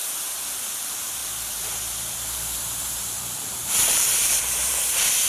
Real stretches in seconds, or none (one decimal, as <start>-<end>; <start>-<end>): 0.0-0.6